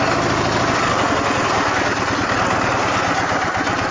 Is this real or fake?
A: real